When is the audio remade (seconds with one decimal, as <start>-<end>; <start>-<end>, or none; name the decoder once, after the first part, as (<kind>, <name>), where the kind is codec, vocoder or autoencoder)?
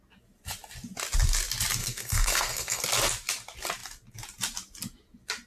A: 1.8-2.8 (codec, SNAC)